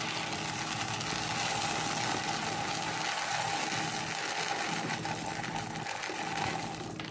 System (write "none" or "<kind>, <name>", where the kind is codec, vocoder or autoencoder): none